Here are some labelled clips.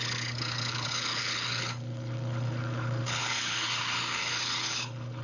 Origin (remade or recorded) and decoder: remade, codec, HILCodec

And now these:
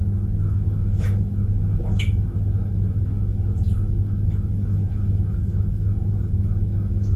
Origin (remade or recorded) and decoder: remade, autoencoder, DAC-VAE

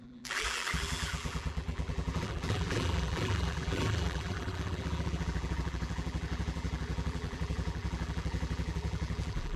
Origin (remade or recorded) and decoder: remade, vocoder, BigVGAN v2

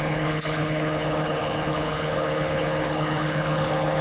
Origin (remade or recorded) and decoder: remade, codec, HILCodec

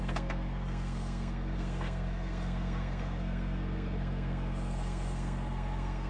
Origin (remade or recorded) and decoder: remade, codec, SNAC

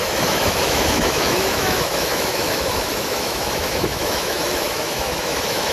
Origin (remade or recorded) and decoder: remade, autoencoder, DAC-VAE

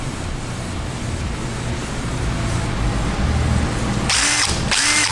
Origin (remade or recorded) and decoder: recorded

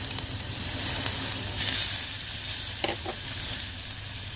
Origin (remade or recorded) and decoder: recorded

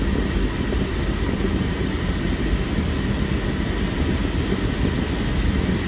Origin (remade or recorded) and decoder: recorded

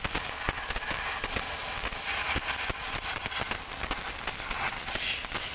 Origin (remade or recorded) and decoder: recorded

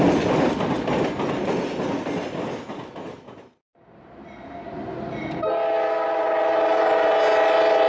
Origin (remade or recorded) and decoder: recorded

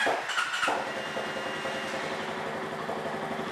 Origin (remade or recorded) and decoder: recorded